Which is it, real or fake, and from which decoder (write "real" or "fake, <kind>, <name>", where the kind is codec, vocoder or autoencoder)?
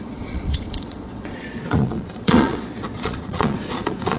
fake, vocoder, Vocos